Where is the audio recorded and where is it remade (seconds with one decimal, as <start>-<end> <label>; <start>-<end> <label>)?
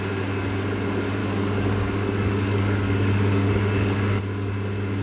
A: 0.0-1.2 recorded; 1.2-4.2 remade; 4.2-5.0 recorded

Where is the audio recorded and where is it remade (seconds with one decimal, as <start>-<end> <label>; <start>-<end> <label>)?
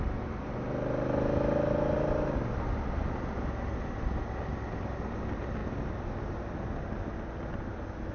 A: 0.0-8.1 recorded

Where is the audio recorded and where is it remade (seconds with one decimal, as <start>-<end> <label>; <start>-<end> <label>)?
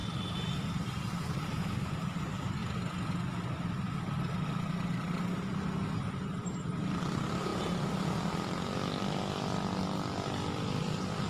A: 0.0-2.6 remade; 2.6-7.0 recorded; 7.0-11.3 remade